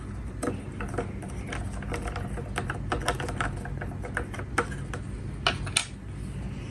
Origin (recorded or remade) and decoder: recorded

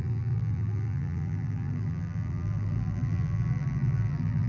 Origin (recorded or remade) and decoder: remade, vocoder, BigVGAN v2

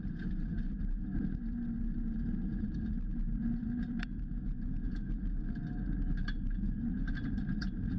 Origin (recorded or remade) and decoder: remade, vocoder, BigVGAN v2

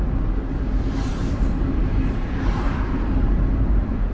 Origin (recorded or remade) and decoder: remade, vocoder, BigVGAN v2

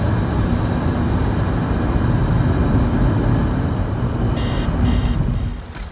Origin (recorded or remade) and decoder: recorded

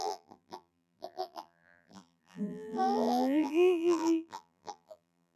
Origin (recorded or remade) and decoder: remade, vocoder, BigVGAN v2